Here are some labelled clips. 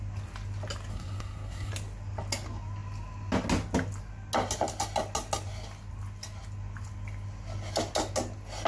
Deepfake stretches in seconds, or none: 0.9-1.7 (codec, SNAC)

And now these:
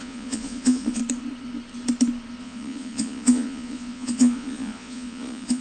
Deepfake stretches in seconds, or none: 0.0-1.0 (vocoder, Vocos); 2.4-5.6